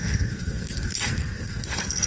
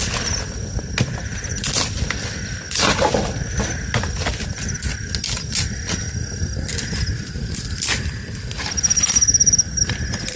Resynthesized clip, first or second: first